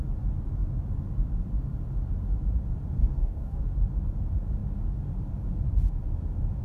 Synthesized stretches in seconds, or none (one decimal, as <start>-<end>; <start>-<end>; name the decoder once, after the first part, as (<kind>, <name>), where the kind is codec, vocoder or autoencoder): 3.0-3.6 (codec, DAC)

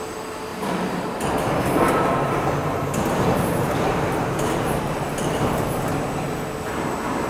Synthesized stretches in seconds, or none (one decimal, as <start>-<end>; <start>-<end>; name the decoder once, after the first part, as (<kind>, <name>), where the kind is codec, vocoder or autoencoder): 0.5-4.8 (vocoder, BigVGAN v2)

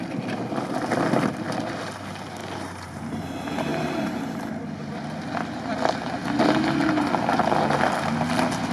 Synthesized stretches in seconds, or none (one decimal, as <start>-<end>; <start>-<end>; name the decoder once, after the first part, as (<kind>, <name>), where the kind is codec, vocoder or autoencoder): 2.4-3.3 (vocoder, BigVGAN v2); 3.7-4.5

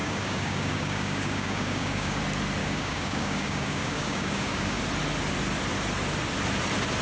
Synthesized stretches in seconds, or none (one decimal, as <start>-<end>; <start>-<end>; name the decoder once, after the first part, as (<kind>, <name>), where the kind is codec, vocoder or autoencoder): 0.0-2.2 (codec, DAC); 2.6-4.8

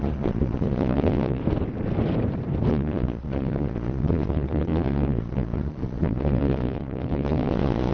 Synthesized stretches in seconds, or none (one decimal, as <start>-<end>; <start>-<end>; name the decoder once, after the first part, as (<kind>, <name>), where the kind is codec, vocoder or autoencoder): 0.0-1.4 (vocoder, Vocos); 2.7-7.9